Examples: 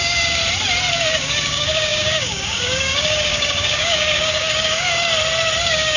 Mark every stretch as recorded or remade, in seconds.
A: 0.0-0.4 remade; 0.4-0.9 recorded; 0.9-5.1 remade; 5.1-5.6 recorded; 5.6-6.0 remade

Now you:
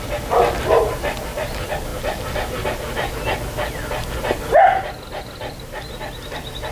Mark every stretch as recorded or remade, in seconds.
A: 0.0-6.7 recorded

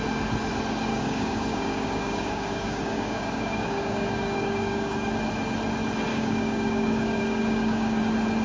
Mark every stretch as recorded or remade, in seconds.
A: 0.0-0.9 recorded; 0.9-5.1 remade; 5.1-6.1 recorded; 6.1-8.0 remade; 8.0-8.4 recorded

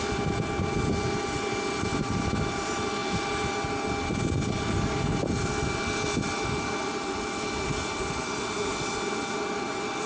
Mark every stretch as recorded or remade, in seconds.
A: 0.0-10.1 recorded

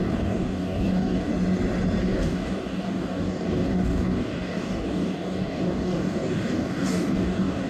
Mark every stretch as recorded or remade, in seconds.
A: 0.0-1.3 remade; 1.3-2.0 recorded; 2.0-7.7 remade

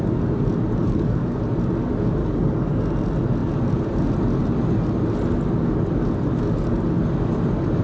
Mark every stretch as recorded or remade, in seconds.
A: 0.0-0.8 recorded; 0.8-1.4 remade; 1.4-2.2 recorded; 2.2-2.8 remade; 2.8-7.8 recorded